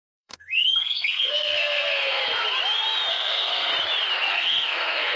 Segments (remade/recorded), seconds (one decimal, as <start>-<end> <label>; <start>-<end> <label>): 0.0-2.2 remade; 2.2-3.1 recorded; 3.1-3.7 remade; 3.7-4.3 recorded; 4.3-5.2 remade